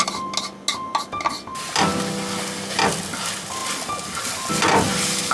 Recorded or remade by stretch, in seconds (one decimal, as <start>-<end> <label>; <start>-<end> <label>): 0.0-5.3 recorded